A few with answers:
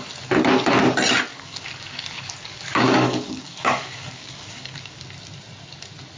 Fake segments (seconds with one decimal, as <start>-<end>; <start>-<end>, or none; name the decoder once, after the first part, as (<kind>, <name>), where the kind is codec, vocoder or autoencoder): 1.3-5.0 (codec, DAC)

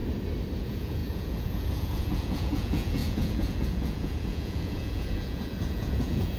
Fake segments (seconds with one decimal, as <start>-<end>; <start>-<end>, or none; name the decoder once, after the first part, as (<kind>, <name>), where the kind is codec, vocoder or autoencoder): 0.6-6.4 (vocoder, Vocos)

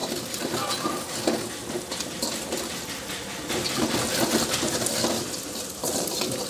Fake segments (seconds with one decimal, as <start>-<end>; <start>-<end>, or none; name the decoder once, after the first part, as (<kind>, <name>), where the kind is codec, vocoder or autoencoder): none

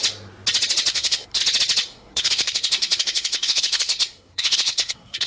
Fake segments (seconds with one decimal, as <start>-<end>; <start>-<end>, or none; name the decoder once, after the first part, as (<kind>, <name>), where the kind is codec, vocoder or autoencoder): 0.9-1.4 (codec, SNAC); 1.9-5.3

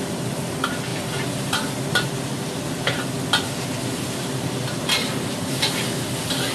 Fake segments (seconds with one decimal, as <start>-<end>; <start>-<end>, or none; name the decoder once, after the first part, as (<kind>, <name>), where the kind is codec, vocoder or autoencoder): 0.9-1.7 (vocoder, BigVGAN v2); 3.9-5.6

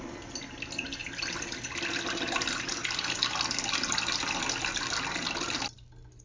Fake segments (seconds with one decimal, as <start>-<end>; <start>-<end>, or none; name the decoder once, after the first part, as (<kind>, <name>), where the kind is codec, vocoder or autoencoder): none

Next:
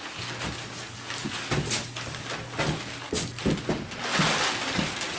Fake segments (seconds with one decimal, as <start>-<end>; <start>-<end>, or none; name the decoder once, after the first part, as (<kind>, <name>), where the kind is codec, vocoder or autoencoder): none